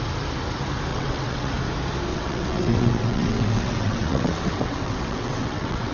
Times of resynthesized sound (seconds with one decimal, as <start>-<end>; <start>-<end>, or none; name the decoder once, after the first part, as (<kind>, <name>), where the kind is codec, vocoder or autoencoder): 0.9-1.5 (vocoder, WaveNeXt); 2.1-5.9